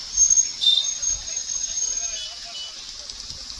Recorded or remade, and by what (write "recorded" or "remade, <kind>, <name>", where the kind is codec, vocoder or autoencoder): recorded